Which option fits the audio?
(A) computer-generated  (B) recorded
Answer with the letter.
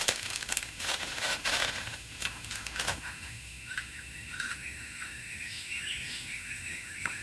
A